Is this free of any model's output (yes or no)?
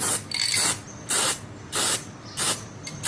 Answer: yes